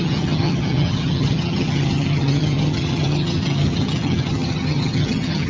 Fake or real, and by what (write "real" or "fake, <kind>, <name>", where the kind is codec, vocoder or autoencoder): fake, vocoder, HiFi-GAN